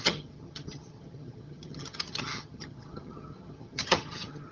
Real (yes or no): no